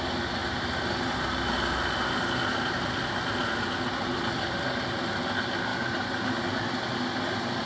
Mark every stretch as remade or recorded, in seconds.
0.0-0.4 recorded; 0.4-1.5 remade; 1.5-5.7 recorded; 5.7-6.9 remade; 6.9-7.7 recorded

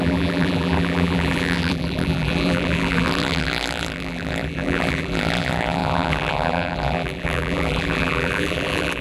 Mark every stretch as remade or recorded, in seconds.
0.0-9.0 remade

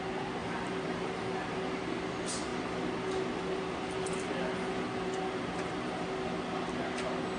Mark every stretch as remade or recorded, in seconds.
0.0-0.4 recorded; 0.4-1.3 remade; 1.3-7.4 recorded

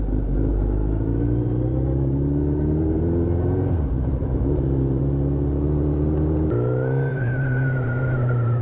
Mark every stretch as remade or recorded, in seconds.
0.0-0.5 recorded; 0.5-5.0 remade; 5.0-7.1 recorded; 7.1-8.6 remade